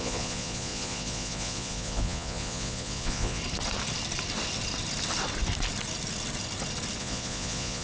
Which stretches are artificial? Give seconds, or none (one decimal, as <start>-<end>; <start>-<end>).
0.0-3.4; 7.0-7.8